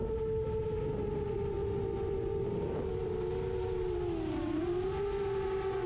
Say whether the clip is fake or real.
real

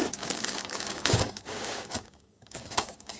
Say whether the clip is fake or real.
fake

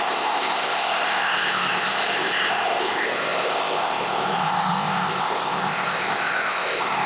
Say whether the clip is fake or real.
fake